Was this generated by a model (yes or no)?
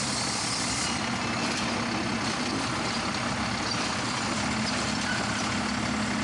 no